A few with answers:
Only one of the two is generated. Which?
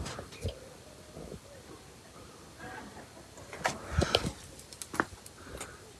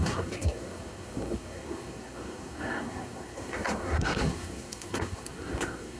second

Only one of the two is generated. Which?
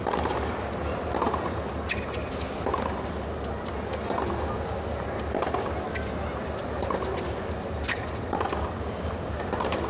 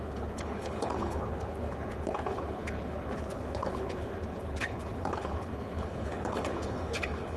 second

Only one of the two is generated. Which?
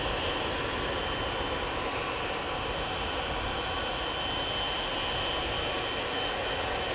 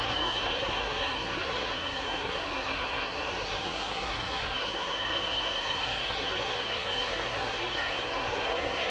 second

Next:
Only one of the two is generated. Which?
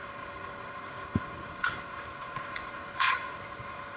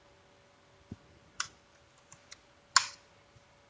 first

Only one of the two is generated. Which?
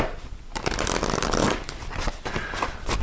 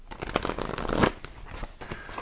first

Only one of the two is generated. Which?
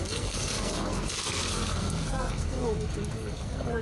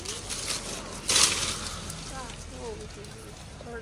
first